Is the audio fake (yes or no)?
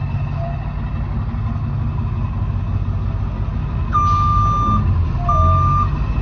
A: no